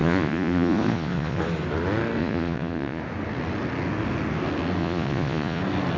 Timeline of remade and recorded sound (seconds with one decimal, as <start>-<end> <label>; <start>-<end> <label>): 0.0-1.4 remade; 1.4-2.2 recorded; 2.2-3.0 remade; 3.0-4.8 recorded; 4.8-5.6 remade; 5.6-6.0 recorded